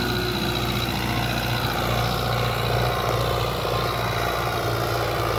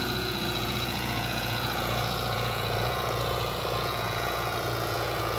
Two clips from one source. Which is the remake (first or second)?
second